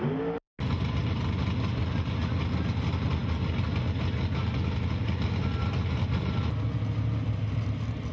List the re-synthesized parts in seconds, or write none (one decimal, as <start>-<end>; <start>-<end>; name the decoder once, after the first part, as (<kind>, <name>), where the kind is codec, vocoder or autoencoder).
none